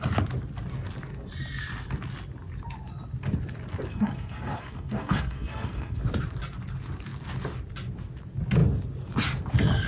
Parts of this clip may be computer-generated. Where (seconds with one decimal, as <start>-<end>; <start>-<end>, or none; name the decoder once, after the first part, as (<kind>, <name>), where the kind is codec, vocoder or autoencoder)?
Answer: 3.9-6.0 (codec, SNAC)